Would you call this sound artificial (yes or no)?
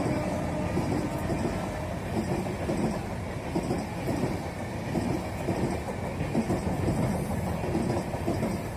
no